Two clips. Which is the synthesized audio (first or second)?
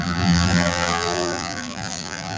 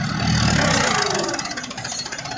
first